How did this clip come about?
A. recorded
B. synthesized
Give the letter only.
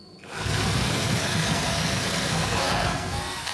B